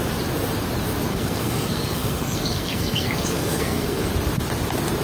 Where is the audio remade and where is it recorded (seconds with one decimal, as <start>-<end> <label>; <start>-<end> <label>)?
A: 0.0-1.1 recorded; 1.1-4.1 remade; 4.1-5.0 recorded